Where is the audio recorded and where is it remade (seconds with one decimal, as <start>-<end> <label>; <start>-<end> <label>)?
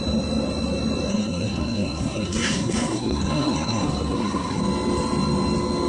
0.0-1.1 recorded; 1.1-4.6 remade; 4.6-5.9 recorded